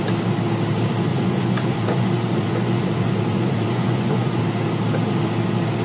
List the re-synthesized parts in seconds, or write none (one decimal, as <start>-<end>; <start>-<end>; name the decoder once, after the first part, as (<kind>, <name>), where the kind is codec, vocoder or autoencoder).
1.1-4.4 (vocoder, Vocos)